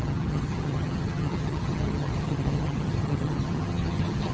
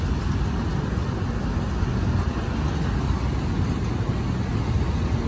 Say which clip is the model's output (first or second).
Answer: first